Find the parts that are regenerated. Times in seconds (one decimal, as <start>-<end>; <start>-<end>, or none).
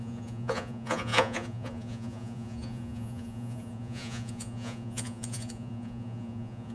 0.0-6.7